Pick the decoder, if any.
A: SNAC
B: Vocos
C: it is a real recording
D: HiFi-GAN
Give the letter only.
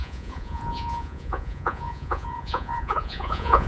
B